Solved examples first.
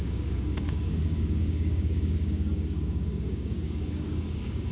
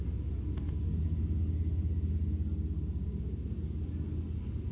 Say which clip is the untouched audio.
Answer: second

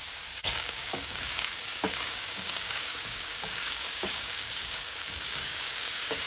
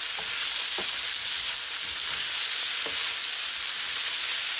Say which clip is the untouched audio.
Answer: second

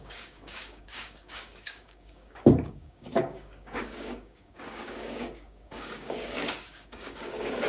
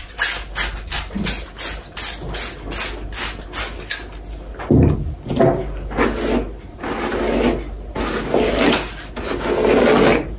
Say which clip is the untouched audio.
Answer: second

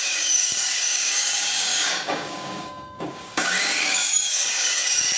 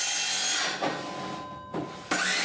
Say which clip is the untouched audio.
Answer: second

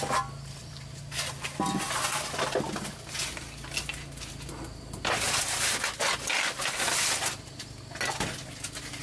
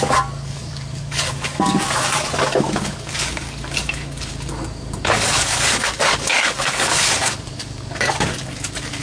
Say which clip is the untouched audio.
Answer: first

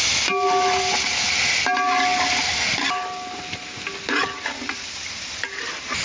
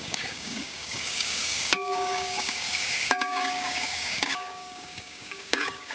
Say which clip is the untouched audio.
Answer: first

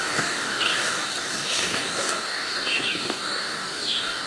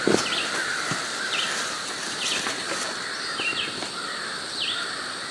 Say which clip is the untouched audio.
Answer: second